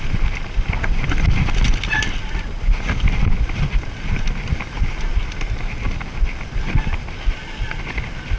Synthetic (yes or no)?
no